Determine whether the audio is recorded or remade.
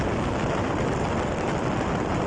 recorded